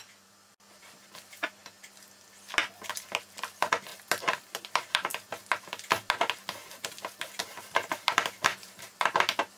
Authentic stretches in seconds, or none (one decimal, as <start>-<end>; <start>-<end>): 1.6-3.4; 3.9-4.6; 5.1-7.4